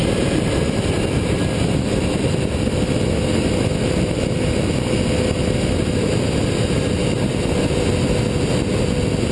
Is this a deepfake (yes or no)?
no